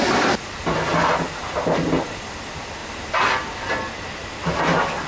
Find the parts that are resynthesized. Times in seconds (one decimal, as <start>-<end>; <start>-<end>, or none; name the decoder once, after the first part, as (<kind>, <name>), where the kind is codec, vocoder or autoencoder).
none